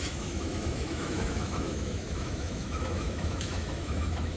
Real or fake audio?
fake